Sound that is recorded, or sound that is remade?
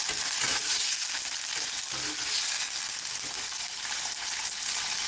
recorded